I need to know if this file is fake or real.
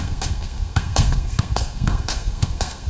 fake